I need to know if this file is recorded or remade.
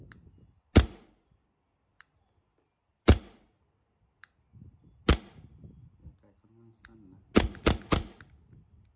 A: recorded